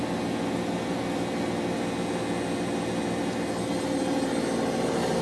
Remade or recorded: recorded